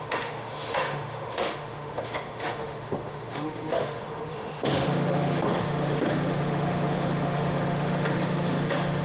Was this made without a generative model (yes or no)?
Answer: no